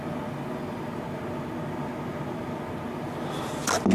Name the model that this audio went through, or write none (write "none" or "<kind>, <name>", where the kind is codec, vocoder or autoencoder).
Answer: none